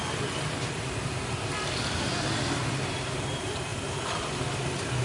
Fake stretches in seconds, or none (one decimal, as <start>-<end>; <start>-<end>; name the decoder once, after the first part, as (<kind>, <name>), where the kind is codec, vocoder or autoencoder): none